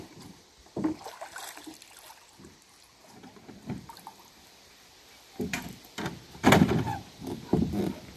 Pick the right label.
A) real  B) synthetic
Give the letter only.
B